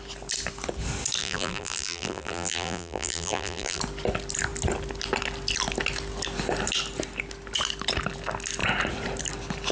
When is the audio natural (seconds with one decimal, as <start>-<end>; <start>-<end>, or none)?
0.0-1.2; 3.8-9.7